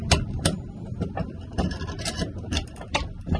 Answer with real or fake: real